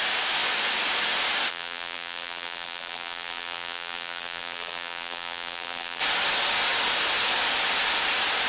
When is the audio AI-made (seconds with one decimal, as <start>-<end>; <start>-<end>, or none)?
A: 1.5-6.0

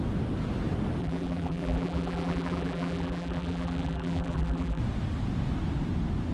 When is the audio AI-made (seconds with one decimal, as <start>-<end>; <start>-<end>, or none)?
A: 1.0-4.8